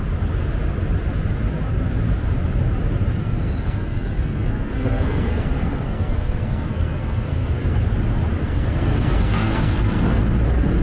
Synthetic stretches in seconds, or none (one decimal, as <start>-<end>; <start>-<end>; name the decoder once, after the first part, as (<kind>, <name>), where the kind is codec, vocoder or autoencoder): 3.2-7.8 (codec, SNAC); 8.4-10.2